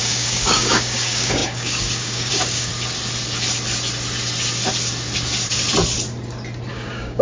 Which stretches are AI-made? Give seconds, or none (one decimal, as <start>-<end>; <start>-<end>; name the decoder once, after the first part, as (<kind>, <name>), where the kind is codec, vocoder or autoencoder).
0.0-2.7 (codec, DAC); 6.7-7.2